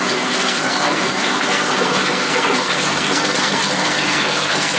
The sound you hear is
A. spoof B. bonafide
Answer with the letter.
A